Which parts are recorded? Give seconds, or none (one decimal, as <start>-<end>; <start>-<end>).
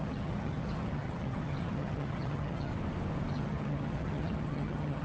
2.7-3.3